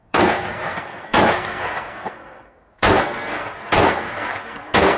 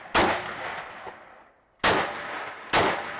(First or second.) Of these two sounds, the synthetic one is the first